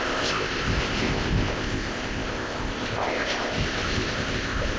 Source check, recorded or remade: remade